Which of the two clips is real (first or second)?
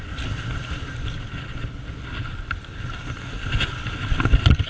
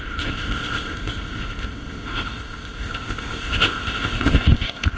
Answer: first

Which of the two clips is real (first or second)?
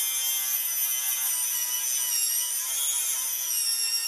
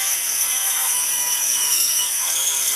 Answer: first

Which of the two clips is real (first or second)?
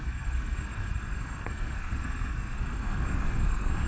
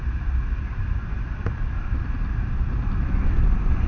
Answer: second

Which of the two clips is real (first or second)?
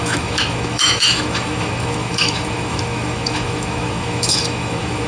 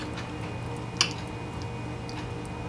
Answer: second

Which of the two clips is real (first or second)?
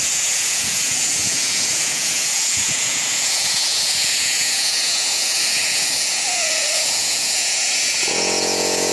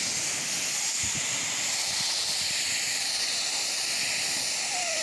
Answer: second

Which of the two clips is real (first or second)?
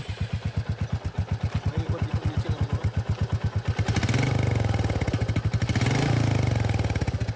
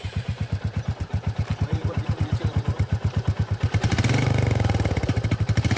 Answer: first